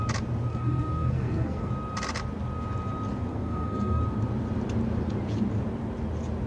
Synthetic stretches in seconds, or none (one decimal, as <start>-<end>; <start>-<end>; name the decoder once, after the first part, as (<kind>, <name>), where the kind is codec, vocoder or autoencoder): 0.5-1.7 (codec, SNAC); 3.3-4.0